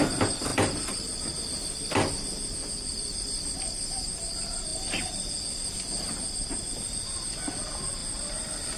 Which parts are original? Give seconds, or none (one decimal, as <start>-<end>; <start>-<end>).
0.0-0.5; 1.4-8.0